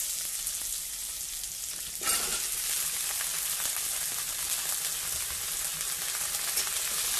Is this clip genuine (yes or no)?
yes